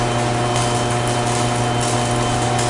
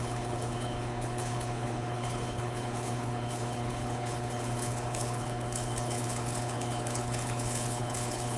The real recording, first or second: first